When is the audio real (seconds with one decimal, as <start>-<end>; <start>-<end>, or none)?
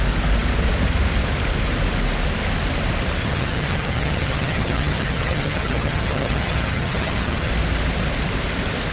0.0-3.2; 7.5-8.9